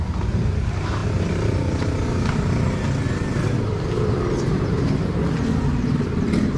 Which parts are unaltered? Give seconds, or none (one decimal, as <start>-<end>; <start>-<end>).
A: 0.0-6.6